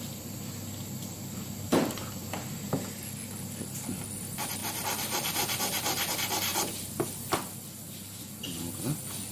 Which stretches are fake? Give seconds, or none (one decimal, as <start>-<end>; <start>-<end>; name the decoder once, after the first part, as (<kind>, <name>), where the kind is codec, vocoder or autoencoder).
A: 1.7-2.5 (vocoder, BigVGAN v2); 4.6-6.1